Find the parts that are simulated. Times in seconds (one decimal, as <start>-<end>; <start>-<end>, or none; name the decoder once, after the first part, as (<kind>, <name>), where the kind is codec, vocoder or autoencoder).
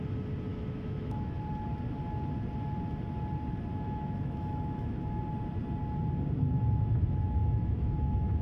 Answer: 0.5-1.4 (autoencoder, DAC-VAE); 3.7-5.2; 7.4-8.4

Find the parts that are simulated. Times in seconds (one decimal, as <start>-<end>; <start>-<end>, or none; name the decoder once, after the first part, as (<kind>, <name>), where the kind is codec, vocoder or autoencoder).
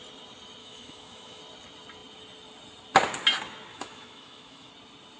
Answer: 0.6-1.4 (autoencoder, DAC-VAE); 3.7-4.7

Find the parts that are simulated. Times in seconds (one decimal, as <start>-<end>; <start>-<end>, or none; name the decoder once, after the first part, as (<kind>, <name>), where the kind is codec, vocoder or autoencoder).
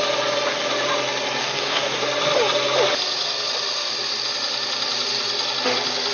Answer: 1.4-2.0 (codec, DAC)